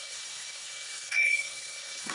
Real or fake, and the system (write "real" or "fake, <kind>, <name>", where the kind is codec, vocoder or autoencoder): fake, codec, SNAC